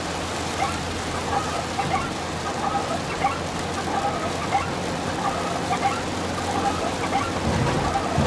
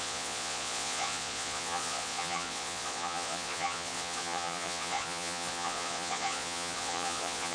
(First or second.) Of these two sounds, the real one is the first